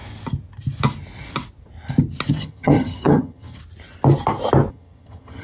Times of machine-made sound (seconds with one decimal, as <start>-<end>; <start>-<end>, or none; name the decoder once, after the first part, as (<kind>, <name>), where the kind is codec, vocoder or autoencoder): 2.3-3.6 (vocoder, HiFi-GAN); 4.7-5.4